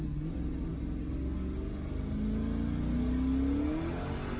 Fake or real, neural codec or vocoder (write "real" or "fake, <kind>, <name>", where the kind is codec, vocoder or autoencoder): real